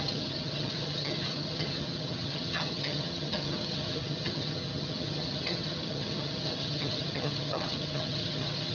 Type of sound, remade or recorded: remade